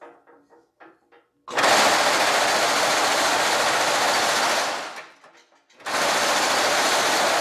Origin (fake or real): real